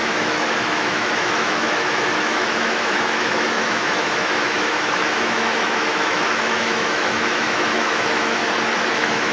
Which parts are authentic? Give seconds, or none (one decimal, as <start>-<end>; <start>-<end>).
8.4-8.9